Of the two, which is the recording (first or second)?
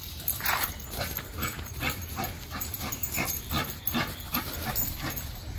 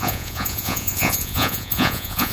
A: first